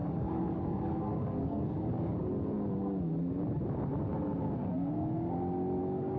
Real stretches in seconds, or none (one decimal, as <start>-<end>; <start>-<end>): 2.1-5.8

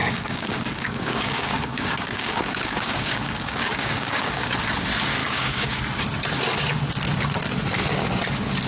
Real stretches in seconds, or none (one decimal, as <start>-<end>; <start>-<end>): 4.5-5.2; 5.8-8.7

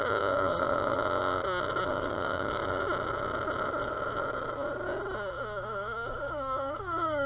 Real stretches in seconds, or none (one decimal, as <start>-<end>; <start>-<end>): 0.5-1.9; 2.6-5.3